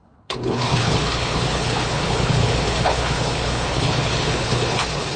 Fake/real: fake